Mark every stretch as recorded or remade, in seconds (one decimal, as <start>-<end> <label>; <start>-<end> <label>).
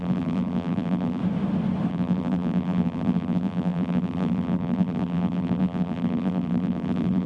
0.0-1.2 remade; 1.2-1.9 recorded; 1.9-7.3 remade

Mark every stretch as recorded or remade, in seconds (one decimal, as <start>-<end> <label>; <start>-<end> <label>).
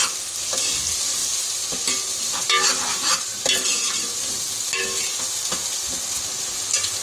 0.0-7.0 recorded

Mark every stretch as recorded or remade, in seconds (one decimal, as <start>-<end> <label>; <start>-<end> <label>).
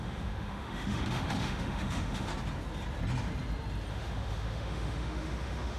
0.0-2.3 remade; 2.3-3.9 recorded; 3.9-5.8 remade